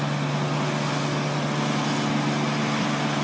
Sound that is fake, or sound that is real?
real